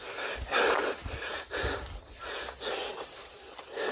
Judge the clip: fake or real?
real